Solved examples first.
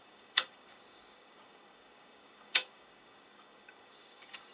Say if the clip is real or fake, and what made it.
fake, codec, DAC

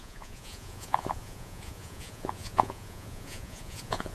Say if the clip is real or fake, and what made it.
fake, vocoder, Vocos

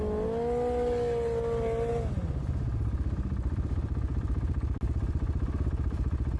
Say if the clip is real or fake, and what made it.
real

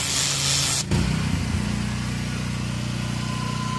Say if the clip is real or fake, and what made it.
real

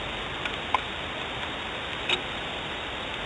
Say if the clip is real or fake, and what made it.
real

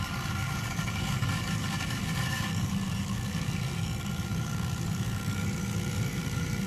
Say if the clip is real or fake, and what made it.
fake, codec, DAC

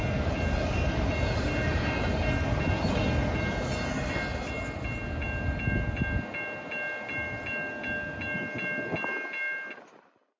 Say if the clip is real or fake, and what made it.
real